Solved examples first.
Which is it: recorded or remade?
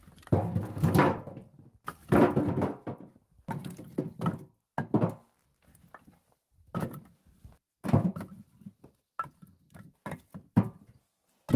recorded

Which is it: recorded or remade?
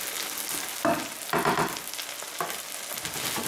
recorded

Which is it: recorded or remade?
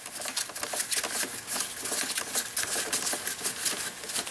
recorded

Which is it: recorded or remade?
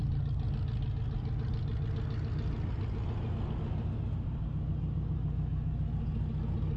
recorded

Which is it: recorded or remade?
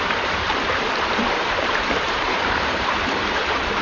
remade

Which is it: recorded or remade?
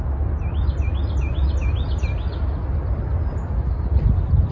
recorded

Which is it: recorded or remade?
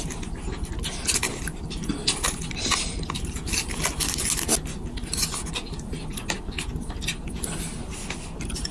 recorded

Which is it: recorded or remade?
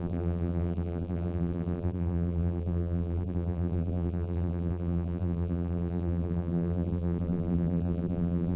remade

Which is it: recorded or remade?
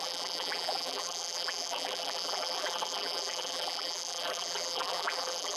remade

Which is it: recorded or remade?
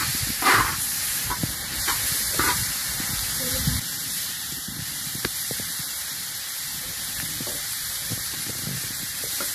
remade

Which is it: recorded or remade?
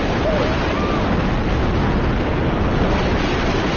recorded